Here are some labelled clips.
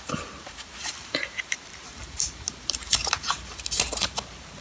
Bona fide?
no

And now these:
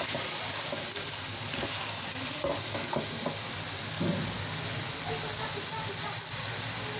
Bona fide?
yes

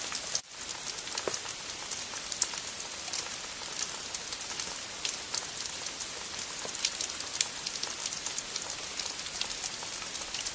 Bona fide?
no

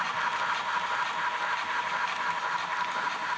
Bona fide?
yes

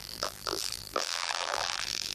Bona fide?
no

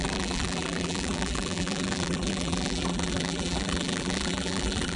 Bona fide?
no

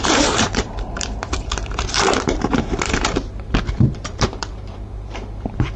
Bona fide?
no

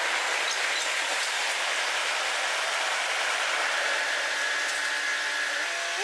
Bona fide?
yes